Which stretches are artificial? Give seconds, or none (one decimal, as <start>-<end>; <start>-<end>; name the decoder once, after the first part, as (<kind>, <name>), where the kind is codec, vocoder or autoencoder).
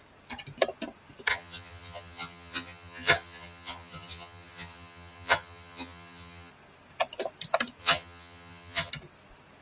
1.3-6.5 (vocoder, HiFi-GAN); 7.8-8.9